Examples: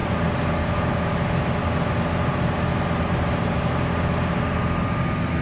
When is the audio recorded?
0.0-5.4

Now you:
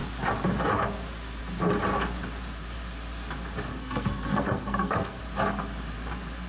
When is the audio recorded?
0.0-3.7; 5.2-6.5

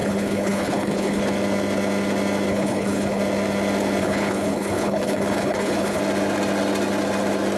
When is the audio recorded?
1.2-2.5; 3.2-4.0; 6.0-7.6

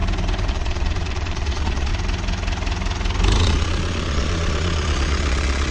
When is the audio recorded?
0.0-0.5; 1.9-3.4

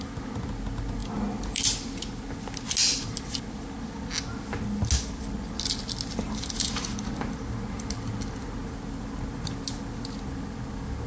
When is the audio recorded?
0.0-11.1